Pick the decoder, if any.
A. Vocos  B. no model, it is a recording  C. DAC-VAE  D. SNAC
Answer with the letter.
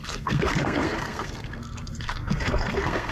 D